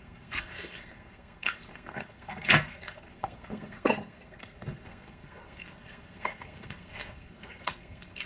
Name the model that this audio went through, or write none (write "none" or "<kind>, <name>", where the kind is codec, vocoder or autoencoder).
codec, SNAC